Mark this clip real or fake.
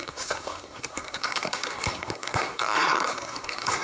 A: fake